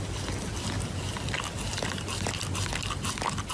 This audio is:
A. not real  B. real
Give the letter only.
B